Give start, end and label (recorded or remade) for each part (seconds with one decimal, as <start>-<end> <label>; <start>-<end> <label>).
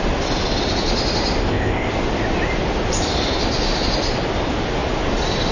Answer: 0.0-1.4 recorded; 1.4-1.9 remade; 1.9-5.5 recorded